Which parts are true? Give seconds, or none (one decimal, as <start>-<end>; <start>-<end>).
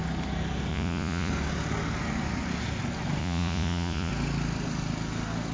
0.0-0.7; 1.3-3.2; 4.1-5.5